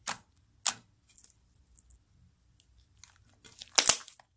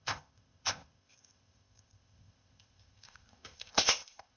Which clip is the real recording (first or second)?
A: first